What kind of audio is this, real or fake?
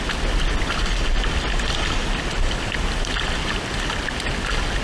real